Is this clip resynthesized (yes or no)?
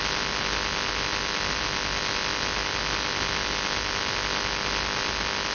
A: no